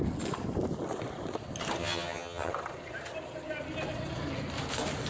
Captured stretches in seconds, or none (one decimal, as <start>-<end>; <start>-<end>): 0.0-1.8; 2.5-5.1